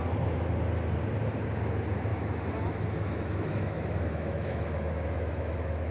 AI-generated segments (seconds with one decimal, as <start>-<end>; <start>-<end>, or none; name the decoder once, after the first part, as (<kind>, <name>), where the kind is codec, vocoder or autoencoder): 2.1-5.9 (autoencoder, DAC-VAE)